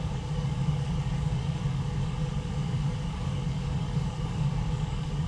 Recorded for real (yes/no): no